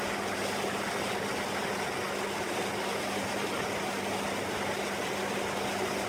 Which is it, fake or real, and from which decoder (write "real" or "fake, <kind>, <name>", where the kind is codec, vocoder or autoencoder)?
real